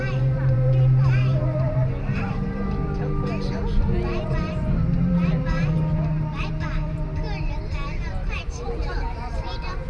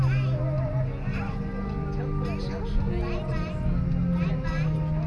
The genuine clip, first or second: second